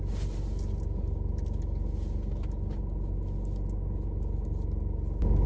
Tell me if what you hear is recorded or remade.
recorded